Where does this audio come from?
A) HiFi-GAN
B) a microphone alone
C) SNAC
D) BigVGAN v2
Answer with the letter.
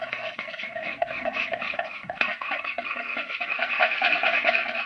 C